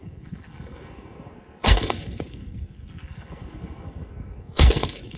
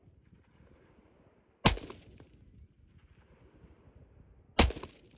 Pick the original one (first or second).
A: second